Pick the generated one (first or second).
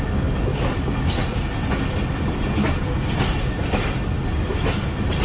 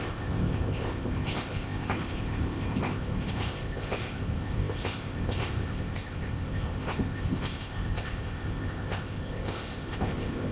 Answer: second